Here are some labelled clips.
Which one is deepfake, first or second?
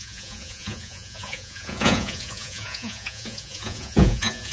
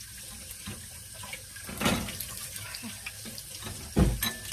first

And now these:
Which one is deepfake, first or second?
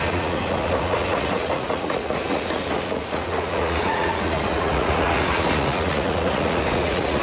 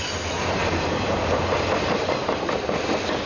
first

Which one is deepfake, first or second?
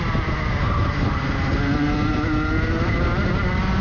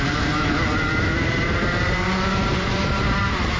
second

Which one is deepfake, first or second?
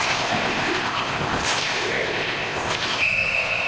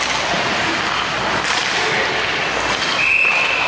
first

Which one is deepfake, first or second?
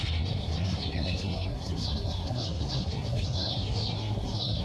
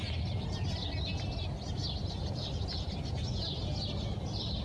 first